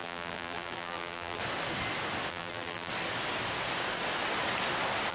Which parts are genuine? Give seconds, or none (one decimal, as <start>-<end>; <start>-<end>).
1.4-2.3; 2.9-5.1